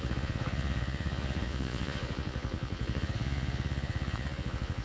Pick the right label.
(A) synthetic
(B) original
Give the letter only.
A